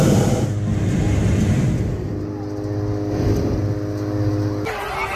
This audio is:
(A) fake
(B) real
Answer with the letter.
B